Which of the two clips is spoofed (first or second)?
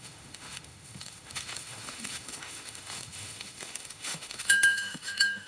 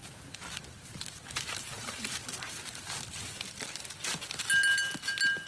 first